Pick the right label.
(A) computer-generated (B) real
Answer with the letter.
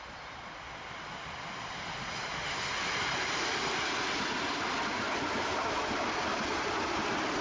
B